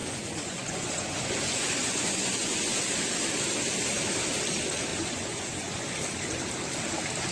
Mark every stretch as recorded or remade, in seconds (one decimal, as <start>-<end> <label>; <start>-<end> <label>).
0.0-2.7 remade; 2.7-4.9 recorded; 4.9-5.9 remade; 5.9-7.3 recorded